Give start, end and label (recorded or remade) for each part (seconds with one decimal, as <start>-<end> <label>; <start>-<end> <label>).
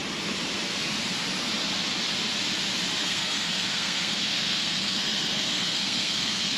0.0-3.0 recorded; 3.0-6.6 remade